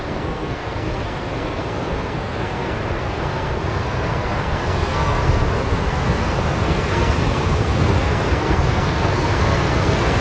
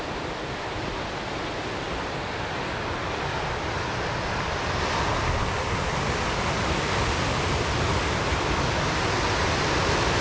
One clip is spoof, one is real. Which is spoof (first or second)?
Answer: first